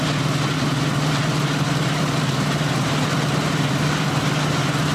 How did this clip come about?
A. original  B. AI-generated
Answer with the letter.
B